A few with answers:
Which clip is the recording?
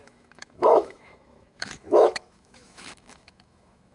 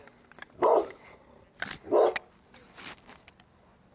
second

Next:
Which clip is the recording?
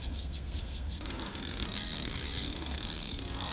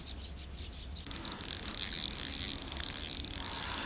second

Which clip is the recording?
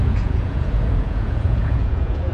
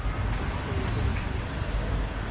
second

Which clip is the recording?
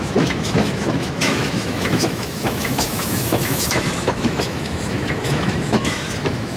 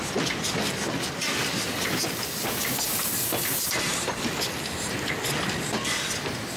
second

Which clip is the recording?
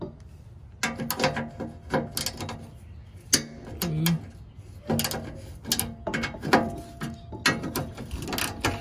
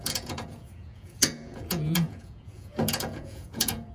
first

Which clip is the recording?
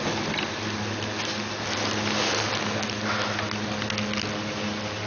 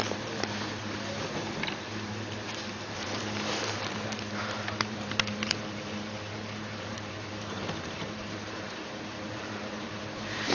first